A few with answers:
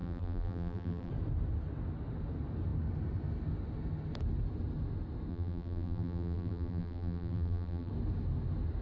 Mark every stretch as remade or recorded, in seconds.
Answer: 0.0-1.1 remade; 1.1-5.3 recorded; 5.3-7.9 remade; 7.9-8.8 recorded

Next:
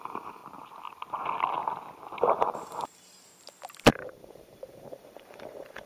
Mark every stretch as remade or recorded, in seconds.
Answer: 0.0-0.4 remade; 0.4-2.2 recorded; 2.2-3.3 remade; 3.3-3.9 recorded; 3.9-5.9 remade

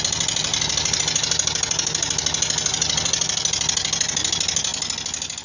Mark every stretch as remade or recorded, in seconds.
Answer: 0.0-0.5 recorded; 0.5-1.0 remade; 1.0-5.4 recorded

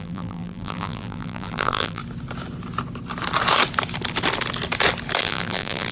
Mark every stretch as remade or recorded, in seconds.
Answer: 0.0-2.0 remade; 2.0-5.2 recorded; 5.2-5.9 remade

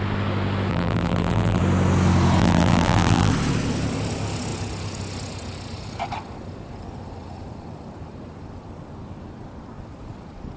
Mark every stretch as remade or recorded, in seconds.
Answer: 0.0-0.7 recorded; 0.7-1.6 remade; 1.6-2.4 recorded; 2.4-3.3 remade; 3.3-10.6 recorded

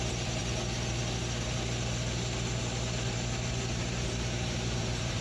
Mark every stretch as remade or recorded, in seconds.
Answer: 0.0-0.4 remade; 0.4-3.5 recorded; 3.5-5.2 remade

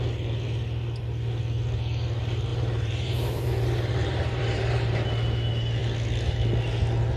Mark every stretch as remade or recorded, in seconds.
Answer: 0.0-2.5 recorded; 2.5-4.8 remade; 4.8-7.2 recorded